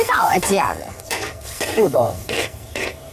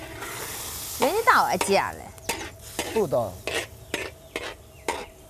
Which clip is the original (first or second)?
second